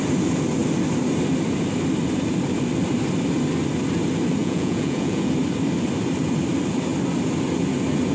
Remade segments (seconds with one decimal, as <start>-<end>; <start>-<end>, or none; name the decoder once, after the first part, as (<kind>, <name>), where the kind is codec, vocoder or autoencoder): 4.4-5.3 (vocoder, Vocos)